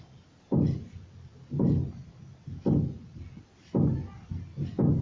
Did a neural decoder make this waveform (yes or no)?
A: no